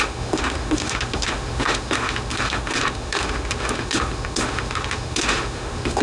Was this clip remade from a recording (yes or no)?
yes